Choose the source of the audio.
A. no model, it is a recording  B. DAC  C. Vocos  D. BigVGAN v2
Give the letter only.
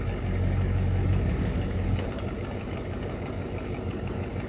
B